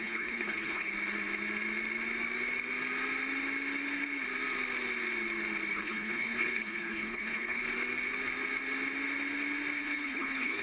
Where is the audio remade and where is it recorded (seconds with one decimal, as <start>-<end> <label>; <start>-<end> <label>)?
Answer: 0.0-0.9 remade; 0.9-5.7 recorded; 5.7-7.6 remade; 7.6-9.8 recorded; 9.8-10.6 remade